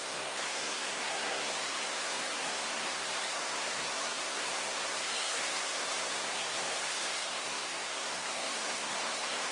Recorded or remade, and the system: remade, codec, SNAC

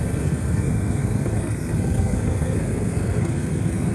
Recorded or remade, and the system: remade, codec, SNAC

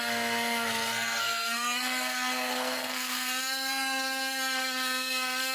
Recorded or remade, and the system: remade, codec, SNAC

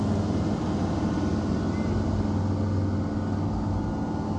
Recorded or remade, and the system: recorded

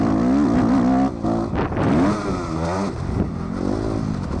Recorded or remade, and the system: recorded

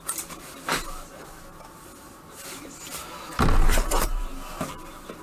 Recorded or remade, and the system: recorded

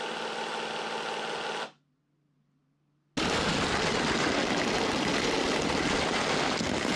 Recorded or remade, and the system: recorded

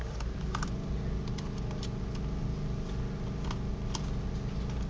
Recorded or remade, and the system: recorded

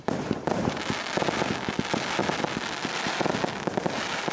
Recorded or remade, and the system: recorded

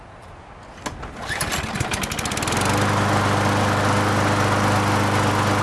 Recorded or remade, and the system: recorded